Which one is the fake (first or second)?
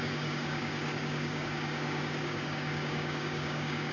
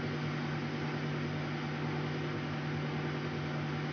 first